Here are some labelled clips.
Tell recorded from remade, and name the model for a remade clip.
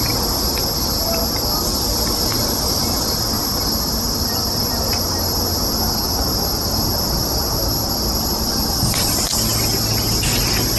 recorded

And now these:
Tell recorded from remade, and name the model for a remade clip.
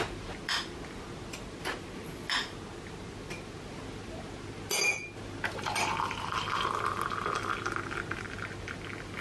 recorded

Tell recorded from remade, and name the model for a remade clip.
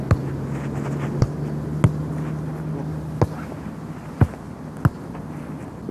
recorded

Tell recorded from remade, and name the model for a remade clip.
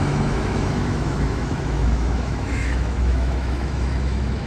remade, autoencoder, DAC-VAE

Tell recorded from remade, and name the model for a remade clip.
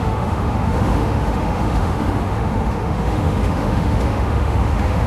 remade, autoencoder, DAC-VAE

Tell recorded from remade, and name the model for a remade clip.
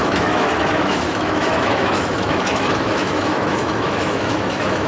remade, autoencoder, DAC-VAE